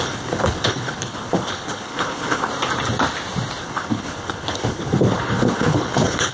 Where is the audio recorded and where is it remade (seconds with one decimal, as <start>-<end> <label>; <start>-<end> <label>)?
0.0-2.5 remade; 2.5-3.6 recorded; 3.6-6.3 remade

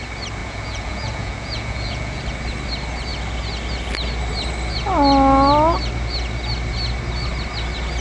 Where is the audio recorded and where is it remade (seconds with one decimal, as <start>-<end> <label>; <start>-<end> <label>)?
0.0-0.4 recorded; 0.4-2.2 remade; 2.2-8.0 recorded

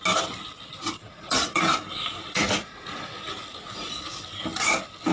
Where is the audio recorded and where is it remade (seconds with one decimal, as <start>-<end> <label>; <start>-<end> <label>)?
0.0-1.0 recorded; 1.0-1.6 remade; 1.6-2.1 recorded; 2.1-3.1 remade; 3.1-3.5 recorded; 3.5-4.2 remade; 4.2-5.1 recorded

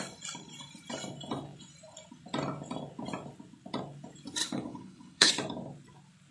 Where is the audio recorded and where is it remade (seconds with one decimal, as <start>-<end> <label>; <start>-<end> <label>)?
0.0-4.4 recorded; 4.4-5.3 remade; 5.3-6.3 recorded

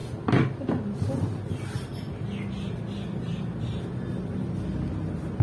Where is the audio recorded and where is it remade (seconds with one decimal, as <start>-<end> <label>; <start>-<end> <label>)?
0.0-5.4 recorded